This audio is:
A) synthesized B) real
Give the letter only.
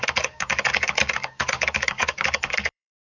A